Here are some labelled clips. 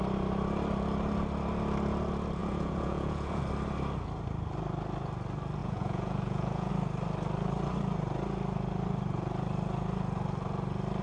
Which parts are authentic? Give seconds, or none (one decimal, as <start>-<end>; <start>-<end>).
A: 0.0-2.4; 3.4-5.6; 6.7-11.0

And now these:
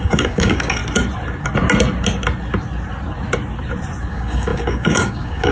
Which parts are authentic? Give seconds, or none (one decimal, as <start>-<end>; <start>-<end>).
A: 0.8-4.1

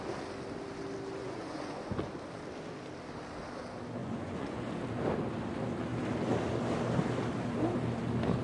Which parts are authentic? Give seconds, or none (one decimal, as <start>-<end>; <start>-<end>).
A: 0.0-1.2; 2.0-4.0; 4.7-8.4

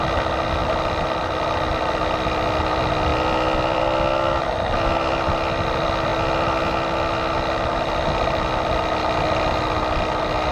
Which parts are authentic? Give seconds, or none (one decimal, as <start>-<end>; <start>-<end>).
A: 0.0-10.5